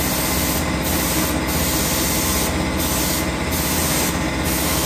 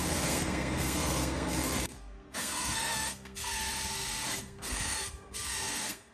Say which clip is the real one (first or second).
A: first